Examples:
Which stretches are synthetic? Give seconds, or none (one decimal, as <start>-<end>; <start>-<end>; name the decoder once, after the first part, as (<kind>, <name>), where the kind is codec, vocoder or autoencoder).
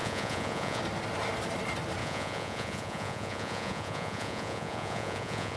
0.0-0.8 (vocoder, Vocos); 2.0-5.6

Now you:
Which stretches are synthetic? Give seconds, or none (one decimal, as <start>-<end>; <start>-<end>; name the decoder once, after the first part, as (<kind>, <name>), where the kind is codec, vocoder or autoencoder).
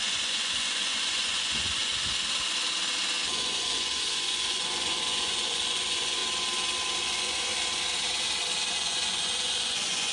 0.0-1.9 (vocoder, Vocos); 3.3-6.2; 7.0-7.5; 8.7-10.1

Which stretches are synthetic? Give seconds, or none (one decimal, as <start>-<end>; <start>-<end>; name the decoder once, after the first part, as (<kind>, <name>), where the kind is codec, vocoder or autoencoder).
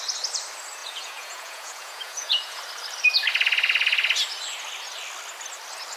0.8-2.6 (vocoder, Vocos)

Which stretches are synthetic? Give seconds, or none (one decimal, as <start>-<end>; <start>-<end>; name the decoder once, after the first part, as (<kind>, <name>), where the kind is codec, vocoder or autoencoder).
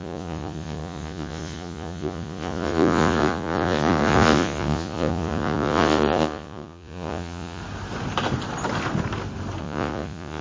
0.0-7.6 (vocoder, Vocos); 9.6-10.4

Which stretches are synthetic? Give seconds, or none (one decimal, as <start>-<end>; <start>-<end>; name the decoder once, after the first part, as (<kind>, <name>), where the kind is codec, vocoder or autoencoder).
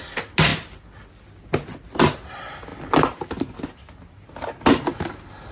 none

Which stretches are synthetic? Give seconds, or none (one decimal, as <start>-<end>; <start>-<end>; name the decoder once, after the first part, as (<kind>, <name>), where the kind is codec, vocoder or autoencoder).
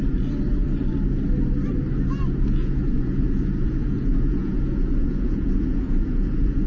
2.6-6.7 (vocoder, Vocos)